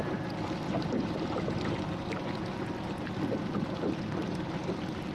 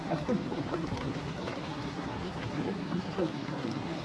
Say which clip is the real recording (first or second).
first